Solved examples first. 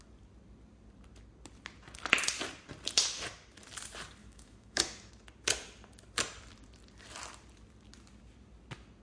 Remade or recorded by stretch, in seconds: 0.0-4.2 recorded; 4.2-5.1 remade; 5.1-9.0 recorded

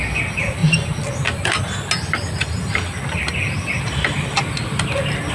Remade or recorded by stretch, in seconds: 0.0-5.3 recorded

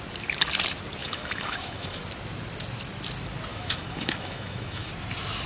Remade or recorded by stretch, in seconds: 0.0-1.0 recorded; 1.0-2.0 remade; 2.0-3.5 recorded; 3.5-4.9 remade; 4.9-5.5 recorded

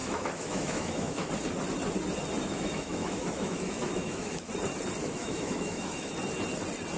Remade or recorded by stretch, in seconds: 0.0-1.3 remade; 1.3-2.4 recorded; 2.4-4.5 remade; 4.5-5.0 recorded; 5.0-6.1 remade; 6.1-7.0 recorded